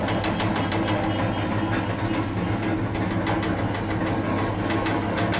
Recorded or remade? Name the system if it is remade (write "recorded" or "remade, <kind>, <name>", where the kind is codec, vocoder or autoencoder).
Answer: recorded